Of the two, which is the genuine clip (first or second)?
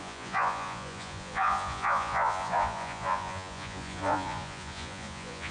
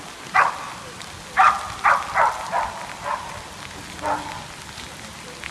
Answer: second